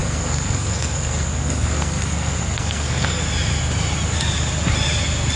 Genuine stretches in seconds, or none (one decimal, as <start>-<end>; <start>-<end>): 3.2-5.4